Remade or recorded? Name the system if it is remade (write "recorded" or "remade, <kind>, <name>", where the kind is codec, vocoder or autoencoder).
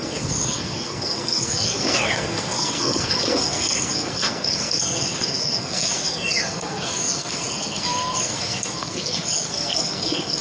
remade, codec, SNAC